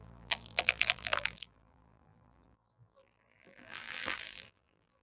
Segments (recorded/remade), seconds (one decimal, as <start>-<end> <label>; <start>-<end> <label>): 0.0-5.0 remade